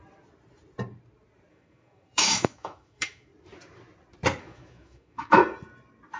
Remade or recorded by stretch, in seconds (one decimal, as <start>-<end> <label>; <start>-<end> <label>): 0.0-1.5 recorded; 1.5-3.3 remade; 3.3-4.4 recorded; 4.4-5.4 remade; 5.4-6.2 recorded